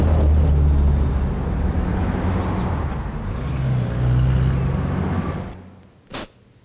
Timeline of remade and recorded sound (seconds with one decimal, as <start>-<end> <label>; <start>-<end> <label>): 0.0-6.6 recorded